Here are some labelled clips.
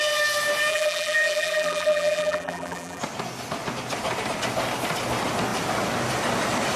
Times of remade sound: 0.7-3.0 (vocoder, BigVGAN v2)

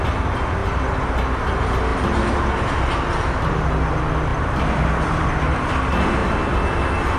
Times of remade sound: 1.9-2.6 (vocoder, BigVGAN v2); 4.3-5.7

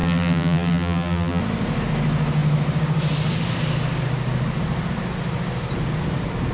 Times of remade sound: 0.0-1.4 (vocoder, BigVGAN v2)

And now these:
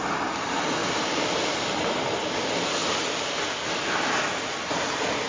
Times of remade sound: 0.8-1.4 (vocoder, BigVGAN v2)

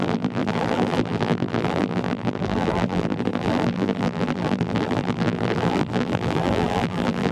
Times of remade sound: 0.0-7.3 (vocoder, BigVGAN v2)

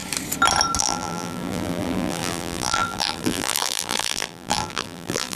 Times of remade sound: 0.8-5.4 (vocoder, BigVGAN v2)

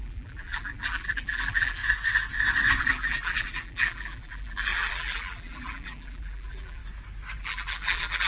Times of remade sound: 0.0-1.8 (vocoder, BigVGAN v2); 2.8-6.8; 7.4-8.3